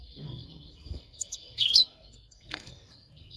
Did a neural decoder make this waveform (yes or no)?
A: yes